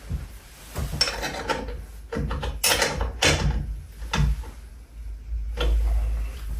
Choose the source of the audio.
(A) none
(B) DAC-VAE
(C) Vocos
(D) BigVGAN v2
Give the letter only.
A